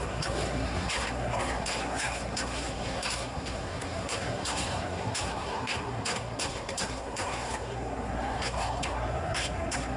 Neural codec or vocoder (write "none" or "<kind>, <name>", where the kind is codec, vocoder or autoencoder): codec, SNAC